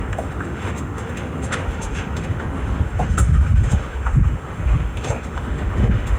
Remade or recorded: remade